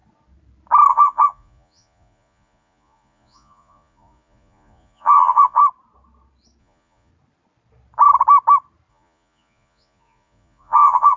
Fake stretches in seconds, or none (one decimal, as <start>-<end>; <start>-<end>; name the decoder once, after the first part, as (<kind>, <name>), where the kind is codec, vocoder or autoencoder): 0.9-5.6 (vocoder, Vocos); 6.6-7.1; 8.9-11.2